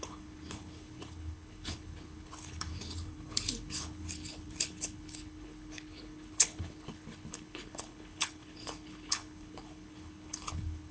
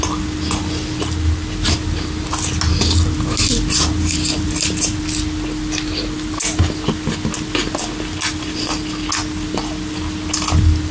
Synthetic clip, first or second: first